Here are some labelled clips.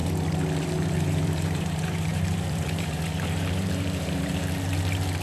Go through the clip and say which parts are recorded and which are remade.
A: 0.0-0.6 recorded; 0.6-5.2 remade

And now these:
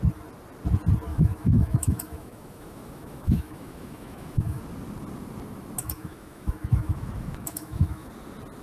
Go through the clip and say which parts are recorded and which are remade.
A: 0.0-1.1 recorded; 1.1-4.6 remade; 4.6-5.8 recorded; 5.8-8.1 remade; 8.1-8.6 recorded

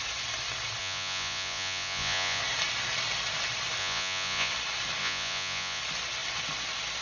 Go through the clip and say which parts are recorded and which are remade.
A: 0.0-0.8 recorded; 0.8-2.4 remade; 2.4-3.8 recorded; 3.8-4.5 remade; 4.5-5.0 recorded; 5.0-5.8 remade; 5.8-7.0 recorded

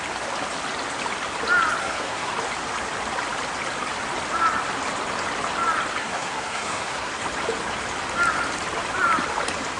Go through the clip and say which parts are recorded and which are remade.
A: 0.0-1.8 recorded; 1.8-2.3 remade; 2.3-6.0 recorded; 6.0-7.1 remade; 7.1-9.8 recorded

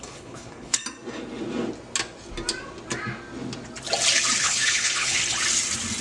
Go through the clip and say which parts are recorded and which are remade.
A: 0.0-0.8 remade; 0.8-4.4 recorded; 4.4-5.2 remade; 5.2-6.0 recorded

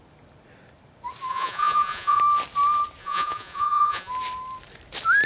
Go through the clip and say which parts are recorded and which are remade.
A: 0.0-1.3 recorded; 1.3-2.2 remade; 2.2-3.0 recorded; 3.0-4.1 remade; 4.1-5.3 recorded

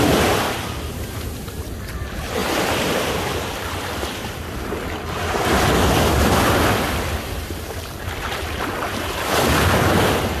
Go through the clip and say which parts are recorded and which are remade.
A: 0.0-2.4 recorded; 2.4-3.2 remade; 3.2-10.4 recorded

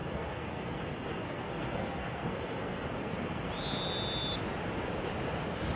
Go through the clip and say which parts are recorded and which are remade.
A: 0.0-3.5 remade; 3.5-5.8 recorded